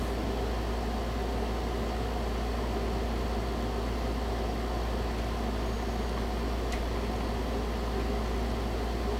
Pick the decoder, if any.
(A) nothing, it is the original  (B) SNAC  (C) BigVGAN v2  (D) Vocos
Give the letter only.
A